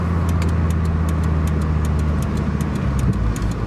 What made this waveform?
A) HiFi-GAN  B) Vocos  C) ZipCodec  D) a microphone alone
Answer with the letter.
D